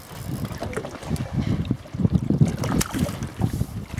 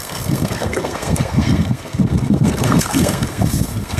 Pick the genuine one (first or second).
first